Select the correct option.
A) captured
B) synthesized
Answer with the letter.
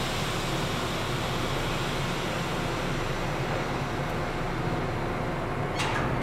A